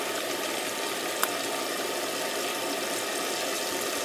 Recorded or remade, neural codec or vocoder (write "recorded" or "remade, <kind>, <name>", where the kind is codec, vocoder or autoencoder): recorded